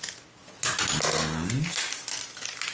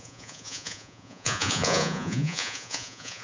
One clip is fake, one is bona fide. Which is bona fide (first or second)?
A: first